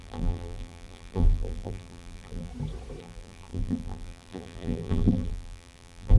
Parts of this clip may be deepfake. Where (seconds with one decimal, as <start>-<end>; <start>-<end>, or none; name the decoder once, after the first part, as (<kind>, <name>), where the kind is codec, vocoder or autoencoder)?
0.0-2.5 (vocoder, BigVGAN v2); 3.0-6.2